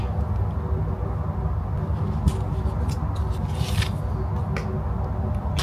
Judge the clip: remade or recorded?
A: recorded